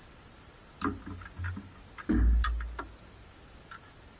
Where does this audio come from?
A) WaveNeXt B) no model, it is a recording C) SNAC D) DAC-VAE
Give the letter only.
B